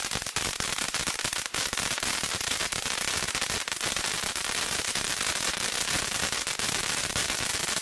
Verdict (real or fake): real